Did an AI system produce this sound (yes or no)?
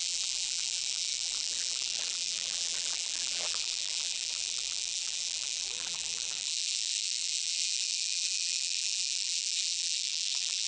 yes